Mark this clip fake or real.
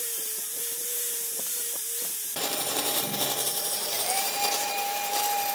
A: fake